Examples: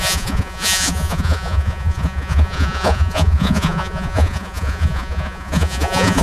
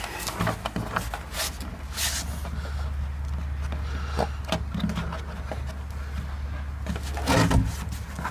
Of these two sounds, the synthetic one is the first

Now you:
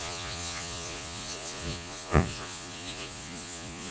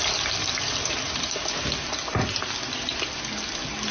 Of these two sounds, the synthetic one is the first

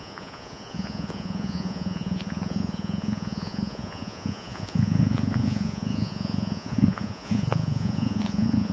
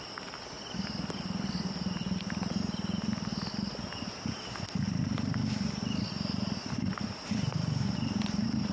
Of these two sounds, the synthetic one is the first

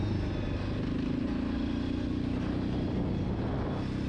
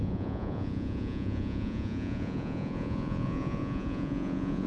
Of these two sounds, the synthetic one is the second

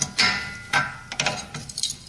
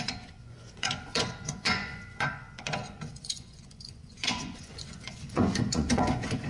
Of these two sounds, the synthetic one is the second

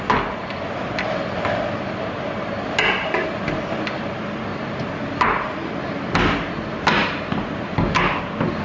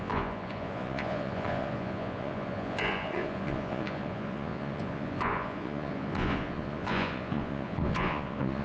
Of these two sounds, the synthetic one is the second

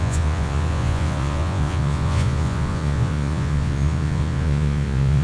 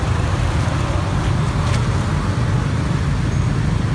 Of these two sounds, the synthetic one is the first